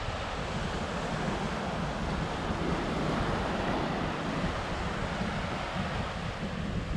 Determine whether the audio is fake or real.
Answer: real